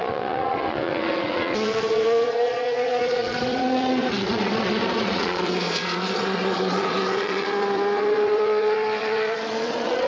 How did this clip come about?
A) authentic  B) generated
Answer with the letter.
B